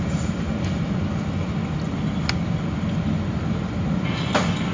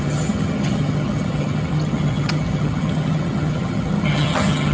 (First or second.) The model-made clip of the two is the second